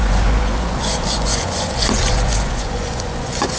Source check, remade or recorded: remade